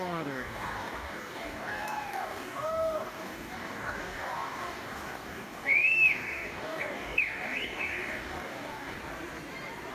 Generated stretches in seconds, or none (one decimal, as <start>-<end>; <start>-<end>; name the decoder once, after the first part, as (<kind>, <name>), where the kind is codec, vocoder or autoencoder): 0.0-9.0 (codec, DAC)